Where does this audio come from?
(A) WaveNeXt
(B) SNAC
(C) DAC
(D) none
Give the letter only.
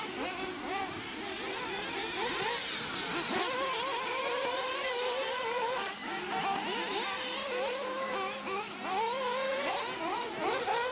D